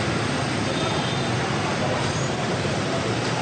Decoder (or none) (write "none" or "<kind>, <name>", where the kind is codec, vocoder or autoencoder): vocoder, BigVGAN v2